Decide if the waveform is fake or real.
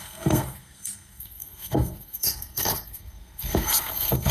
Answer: fake